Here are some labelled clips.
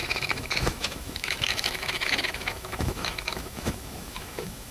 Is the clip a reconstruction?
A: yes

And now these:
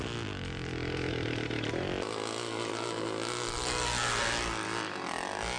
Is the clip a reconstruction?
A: no